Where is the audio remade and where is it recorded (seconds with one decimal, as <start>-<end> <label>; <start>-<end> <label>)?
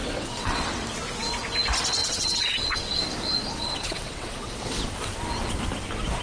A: 0.0-0.7 remade; 0.7-2.0 recorded; 2.0-3.0 remade; 3.0-3.6 recorded; 3.6-4.8 remade; 4.8-6.2 recorded